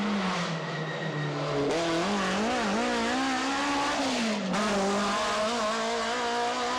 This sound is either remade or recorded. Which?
recorded